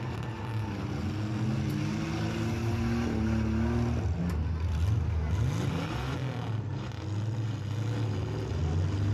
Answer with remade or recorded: recorded